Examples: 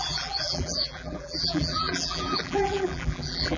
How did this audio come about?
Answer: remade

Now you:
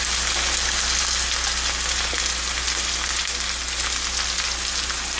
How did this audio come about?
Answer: recorded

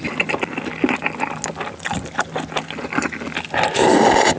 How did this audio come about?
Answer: recorded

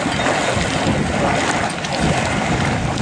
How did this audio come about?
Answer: recorded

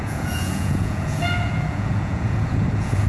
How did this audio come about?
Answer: remade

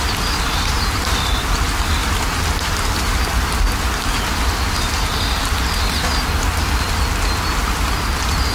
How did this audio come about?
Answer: recorded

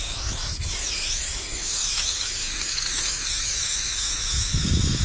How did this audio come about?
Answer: remade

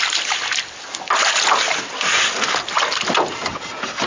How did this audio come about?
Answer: recorded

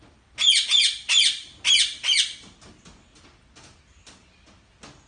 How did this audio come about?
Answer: recorded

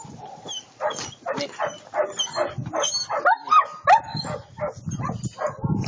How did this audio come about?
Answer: recorded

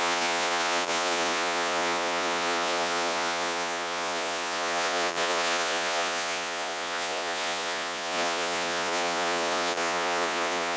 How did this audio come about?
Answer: remade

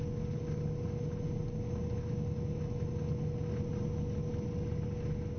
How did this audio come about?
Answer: recorded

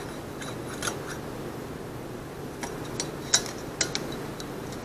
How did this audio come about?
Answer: recorded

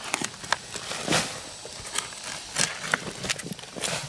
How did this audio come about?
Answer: recorded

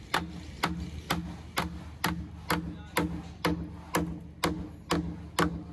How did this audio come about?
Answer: recorded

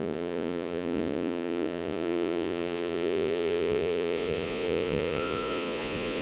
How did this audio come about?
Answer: remade